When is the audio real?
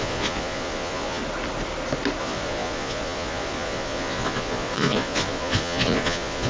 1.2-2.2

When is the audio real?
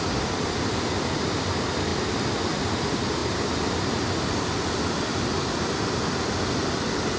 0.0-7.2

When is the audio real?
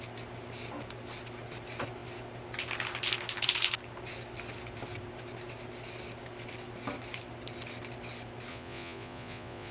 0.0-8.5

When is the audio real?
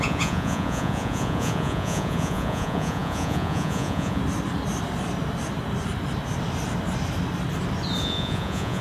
4.2-8.0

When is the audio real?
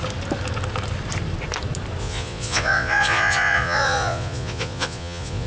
0.0-2.0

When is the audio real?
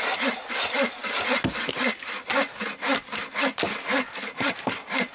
0.0-5.1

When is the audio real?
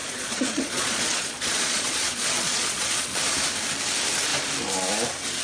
3.2-5.4